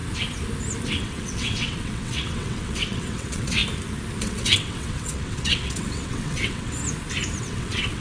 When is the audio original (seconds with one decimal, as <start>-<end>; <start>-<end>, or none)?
0.0-1.0; 3.6-4.2; 6.8-7.4